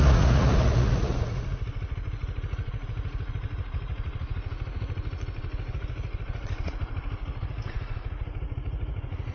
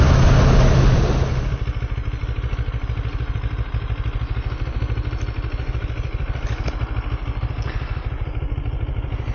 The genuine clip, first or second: second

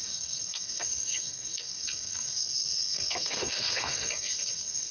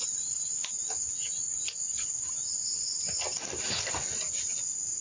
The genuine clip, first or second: second